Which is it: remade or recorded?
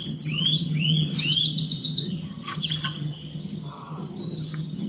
remade